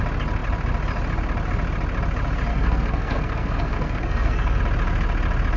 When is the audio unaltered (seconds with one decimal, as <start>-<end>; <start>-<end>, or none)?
0.0-2.5; 4.6-5.6